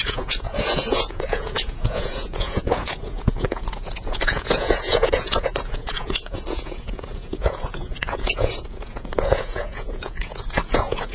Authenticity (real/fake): fake